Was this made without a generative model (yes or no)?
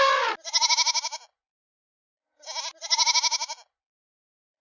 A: yes